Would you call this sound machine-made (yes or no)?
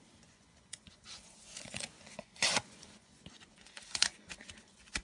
yes